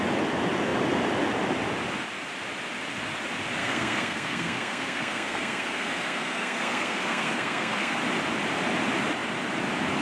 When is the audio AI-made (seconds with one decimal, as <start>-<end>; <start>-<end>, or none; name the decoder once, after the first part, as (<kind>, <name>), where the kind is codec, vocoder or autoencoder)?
3.6-8.0 (codec, SNAC)